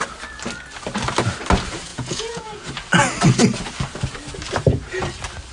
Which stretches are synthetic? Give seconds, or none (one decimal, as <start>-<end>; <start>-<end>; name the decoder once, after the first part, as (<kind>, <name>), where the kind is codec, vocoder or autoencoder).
1.9-2.7 (vocoder, Vocos)